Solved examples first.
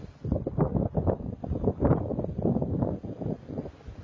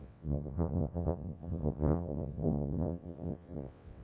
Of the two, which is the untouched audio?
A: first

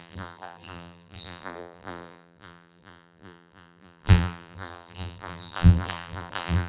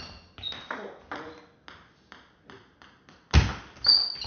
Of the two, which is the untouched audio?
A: second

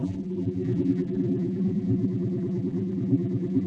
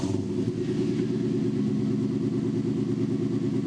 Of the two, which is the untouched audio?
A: second